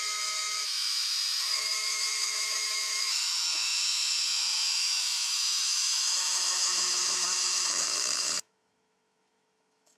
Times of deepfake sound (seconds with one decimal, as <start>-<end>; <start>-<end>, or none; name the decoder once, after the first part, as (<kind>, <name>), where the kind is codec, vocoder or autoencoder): 0.0-10.0 (autoencoder, DAC-VAE)